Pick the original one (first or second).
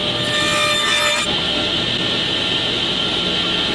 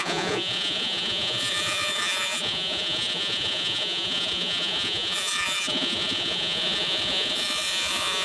first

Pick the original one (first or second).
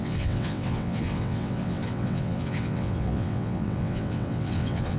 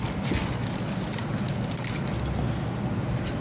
second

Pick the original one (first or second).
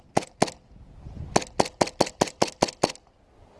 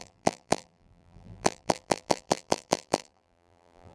first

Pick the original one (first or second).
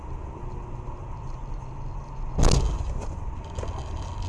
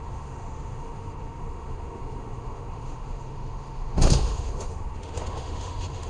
first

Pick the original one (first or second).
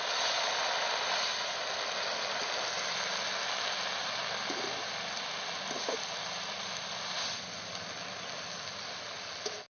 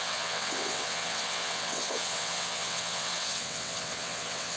first